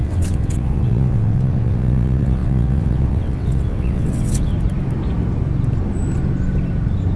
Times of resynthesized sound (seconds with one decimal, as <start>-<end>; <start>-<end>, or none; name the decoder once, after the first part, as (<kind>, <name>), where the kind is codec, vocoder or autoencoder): 0.0-4.5 (vocoder, WaveNeXt)